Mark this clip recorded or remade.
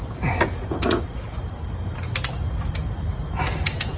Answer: recorded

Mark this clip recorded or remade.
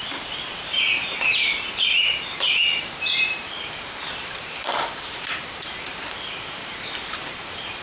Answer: remade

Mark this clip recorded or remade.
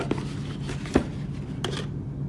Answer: recorded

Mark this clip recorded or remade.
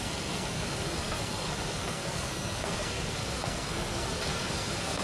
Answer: remade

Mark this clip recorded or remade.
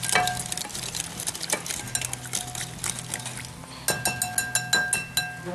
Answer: recorded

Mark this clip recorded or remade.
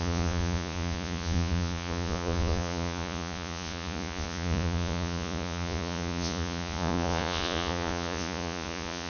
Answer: remade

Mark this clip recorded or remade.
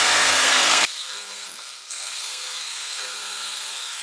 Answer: remade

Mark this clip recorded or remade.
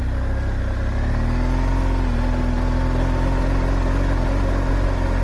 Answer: recorded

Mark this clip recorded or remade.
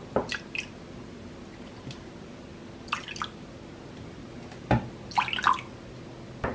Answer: recorded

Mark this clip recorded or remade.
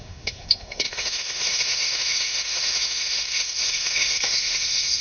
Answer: remade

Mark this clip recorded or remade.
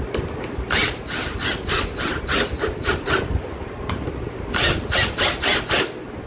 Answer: recorded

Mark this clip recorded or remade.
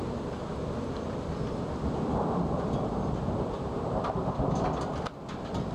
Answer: recorded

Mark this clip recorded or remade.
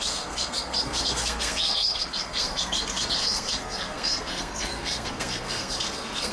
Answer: remade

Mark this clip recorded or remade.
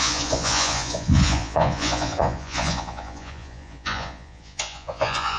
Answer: remade